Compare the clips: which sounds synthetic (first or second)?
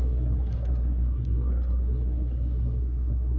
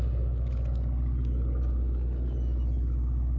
first